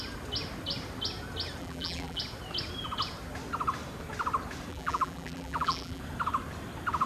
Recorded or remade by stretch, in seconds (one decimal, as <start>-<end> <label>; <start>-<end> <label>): 0.0-1.6 recorded; 1.6-2.2 remade; 2.2-4.7 recorded; 4.7-6.0 remade; 6.0-7.1 recorded